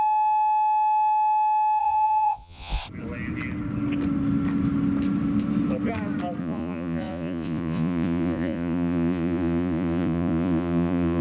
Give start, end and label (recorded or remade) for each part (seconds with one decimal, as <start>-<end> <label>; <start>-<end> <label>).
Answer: 0.0-1.8 recorded; 1.8-2.8 remade; 2.8-6.4 recorded; 6.4-11.2 remade